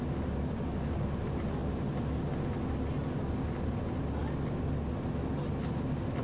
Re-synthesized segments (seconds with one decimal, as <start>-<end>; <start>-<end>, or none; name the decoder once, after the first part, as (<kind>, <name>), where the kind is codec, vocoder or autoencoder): none